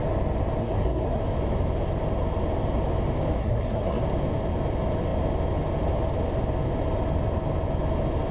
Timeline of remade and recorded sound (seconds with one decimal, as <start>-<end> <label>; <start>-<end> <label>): 0.0-0.6 recorded; 0.6-1.2 remade; 1.2-3.4 recorded; 3.4-4.0 remade; 4.0-8.3 recorded